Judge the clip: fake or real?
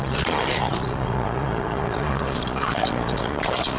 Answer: fake